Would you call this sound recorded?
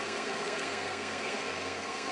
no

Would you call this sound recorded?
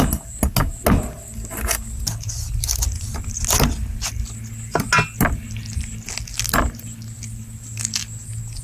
yes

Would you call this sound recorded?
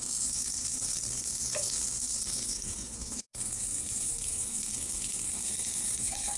no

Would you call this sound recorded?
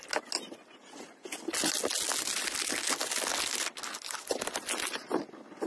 yes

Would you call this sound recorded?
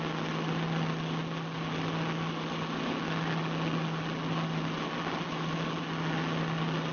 yes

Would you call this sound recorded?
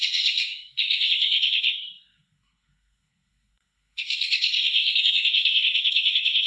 no